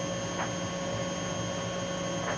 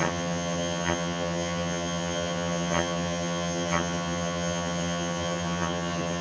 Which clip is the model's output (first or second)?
second